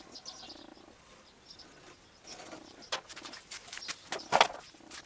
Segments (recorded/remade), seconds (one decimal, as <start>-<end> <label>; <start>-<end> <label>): 0.0-5.1 recorded